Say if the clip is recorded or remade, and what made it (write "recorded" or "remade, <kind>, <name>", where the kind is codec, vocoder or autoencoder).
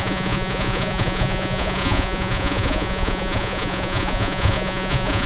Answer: remade, vocoder, Vocos